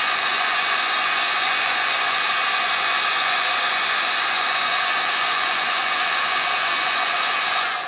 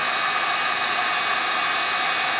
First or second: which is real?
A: second